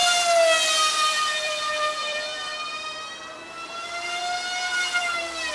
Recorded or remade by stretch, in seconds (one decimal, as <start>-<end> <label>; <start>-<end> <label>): 0.0-0.9 recorded; 0.9-4.2 remade; 4.2-4.8 recorded; 4.8-5.5 remade